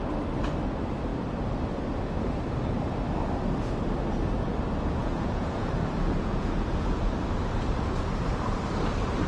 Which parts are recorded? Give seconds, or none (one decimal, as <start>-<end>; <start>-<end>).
0.0-5.0; 7.1-9.3

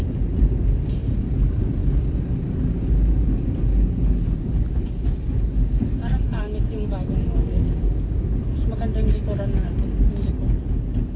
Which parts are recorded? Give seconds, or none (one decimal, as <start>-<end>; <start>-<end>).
0.0-11.2

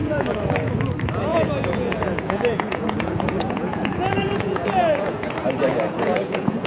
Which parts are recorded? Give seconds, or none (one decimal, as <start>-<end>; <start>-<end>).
0.7-1.3; 5.3-5.7

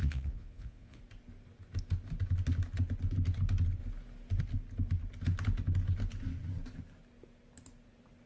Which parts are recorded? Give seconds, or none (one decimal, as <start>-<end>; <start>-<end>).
1.0-8.3

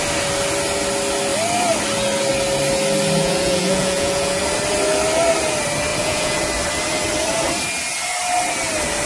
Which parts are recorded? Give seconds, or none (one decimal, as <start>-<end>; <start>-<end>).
0.0-3.2; 4.4-5.9; 6.5-9.1

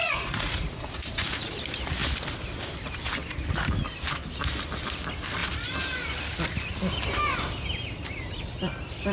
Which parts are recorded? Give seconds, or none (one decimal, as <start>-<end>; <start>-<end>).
1.6-9.1